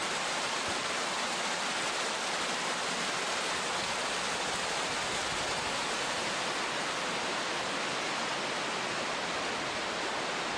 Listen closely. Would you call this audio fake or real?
real